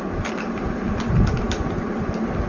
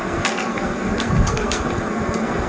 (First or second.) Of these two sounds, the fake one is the second